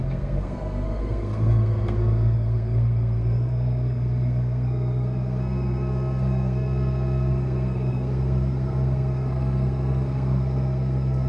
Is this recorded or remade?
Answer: remade